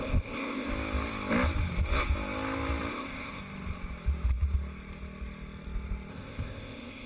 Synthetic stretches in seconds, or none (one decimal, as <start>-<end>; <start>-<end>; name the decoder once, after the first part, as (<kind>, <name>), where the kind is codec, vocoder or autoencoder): 0.0-0.7 (codec, ZipCodec); 2.9-3.4; 6.1-7.1